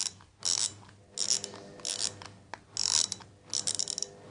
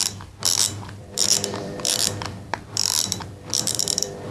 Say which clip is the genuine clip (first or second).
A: first